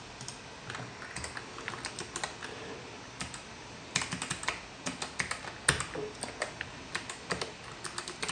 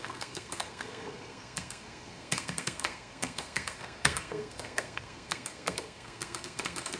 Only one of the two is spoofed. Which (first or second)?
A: second